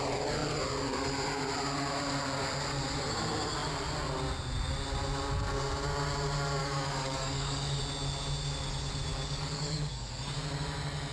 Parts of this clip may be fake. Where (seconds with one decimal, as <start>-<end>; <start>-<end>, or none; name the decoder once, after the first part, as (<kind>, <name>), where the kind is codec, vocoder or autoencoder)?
6.6-7.8 (codec, DAC); 9.1-10.1